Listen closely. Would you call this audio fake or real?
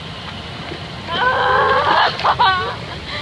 real